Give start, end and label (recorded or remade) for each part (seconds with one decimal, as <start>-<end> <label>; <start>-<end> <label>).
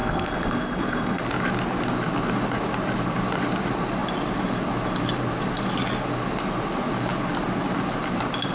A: 0.0-1.2 remade; 1.2-8.5 recorded